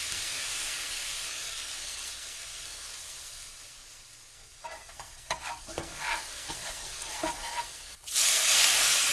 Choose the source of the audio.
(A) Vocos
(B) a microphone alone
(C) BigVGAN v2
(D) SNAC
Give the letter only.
D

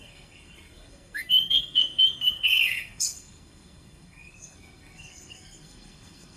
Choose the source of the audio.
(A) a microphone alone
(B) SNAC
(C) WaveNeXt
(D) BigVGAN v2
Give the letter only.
B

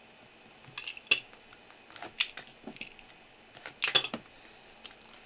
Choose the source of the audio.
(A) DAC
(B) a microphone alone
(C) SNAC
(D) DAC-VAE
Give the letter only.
B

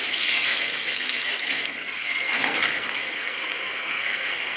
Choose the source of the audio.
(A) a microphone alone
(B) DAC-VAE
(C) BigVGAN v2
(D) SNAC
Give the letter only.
D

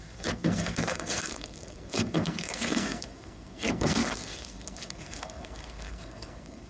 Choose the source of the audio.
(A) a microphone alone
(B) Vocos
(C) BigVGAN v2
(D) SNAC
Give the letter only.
D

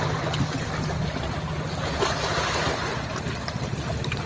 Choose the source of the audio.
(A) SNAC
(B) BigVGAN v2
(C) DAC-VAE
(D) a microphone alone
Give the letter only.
D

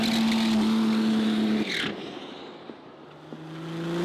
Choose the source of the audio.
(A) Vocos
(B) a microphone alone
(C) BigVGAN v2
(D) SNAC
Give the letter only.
B